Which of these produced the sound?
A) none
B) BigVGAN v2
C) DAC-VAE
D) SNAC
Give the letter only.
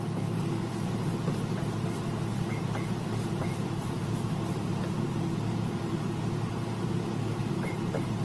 B